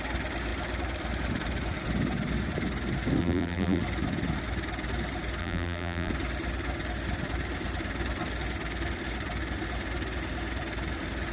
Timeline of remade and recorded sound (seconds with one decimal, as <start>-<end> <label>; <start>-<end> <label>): 0.0-3.2 recorded; 3.2-3.8 remade; 3.8-5.4 recorded; 5.4-6.1 remade; 6.1-11.3 recorded